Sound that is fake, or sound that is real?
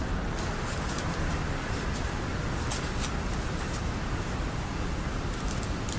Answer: real